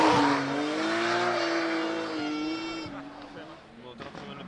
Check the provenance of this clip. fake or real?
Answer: real